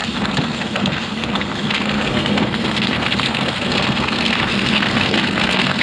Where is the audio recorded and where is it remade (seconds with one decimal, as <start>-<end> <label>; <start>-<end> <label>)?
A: 0.0-5.8 remade